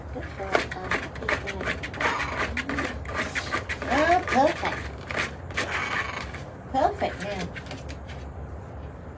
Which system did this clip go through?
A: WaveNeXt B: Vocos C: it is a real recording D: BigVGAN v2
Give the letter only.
C